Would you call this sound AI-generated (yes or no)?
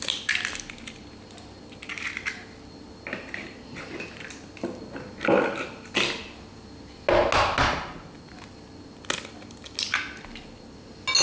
no